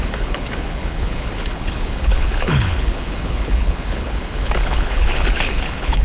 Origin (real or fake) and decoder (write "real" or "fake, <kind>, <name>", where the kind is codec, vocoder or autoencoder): fake, codec, HILCodec